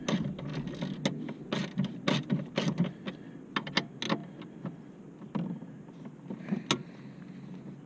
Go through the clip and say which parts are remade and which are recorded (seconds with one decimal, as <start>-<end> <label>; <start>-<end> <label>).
0.0-7.9 recorded